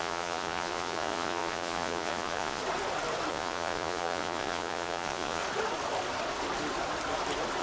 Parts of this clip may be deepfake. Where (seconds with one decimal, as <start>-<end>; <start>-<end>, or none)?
0.0-2.6; 3.3-5.4